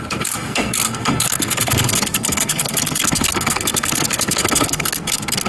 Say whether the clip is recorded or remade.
remade